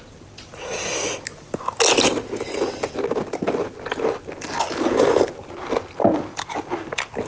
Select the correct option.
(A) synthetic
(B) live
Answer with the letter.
B